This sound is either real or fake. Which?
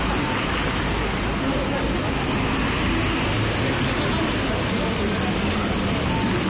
real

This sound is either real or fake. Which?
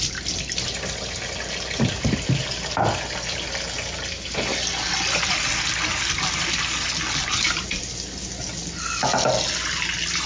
real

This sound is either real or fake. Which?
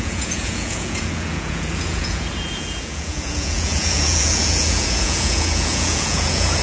fake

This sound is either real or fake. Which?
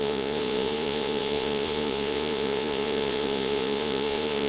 fake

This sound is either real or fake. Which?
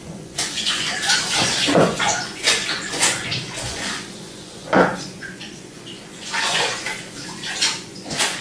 fake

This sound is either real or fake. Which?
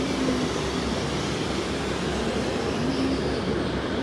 real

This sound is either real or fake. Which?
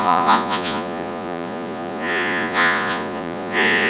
fake